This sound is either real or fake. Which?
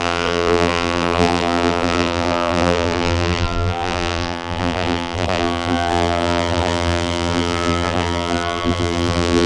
fake